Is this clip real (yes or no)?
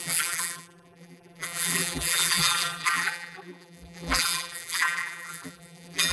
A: no